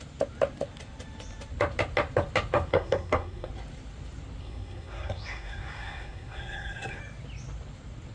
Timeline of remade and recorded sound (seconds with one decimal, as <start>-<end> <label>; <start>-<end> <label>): 0.0-2.7 recorded; 2.7-3.5 remade; 3.5-4.4 recorded; 4.4-7.0 remade; 7.0-8.1 recorded